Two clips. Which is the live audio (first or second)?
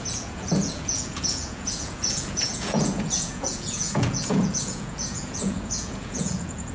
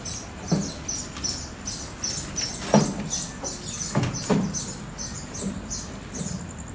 second